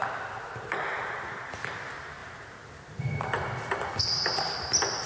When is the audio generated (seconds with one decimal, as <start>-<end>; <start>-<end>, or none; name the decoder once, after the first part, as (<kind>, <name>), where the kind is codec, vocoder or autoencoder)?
none